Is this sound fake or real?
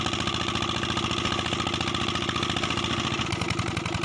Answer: real